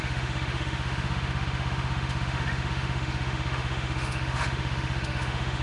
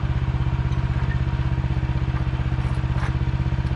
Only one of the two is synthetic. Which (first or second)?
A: first